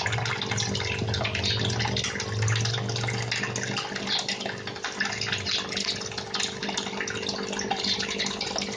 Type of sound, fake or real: real